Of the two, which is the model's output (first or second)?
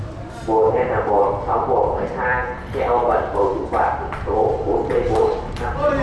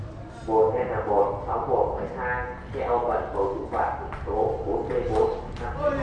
first